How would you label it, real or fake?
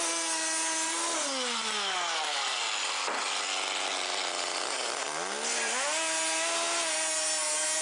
real